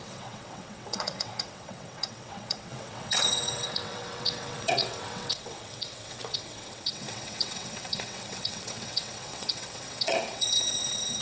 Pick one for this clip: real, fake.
fake